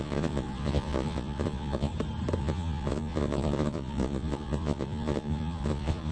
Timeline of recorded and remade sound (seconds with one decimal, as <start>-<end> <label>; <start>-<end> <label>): 0.0-1.9 remade; 1.9-2.4 recorded; 2.4-6.1 remade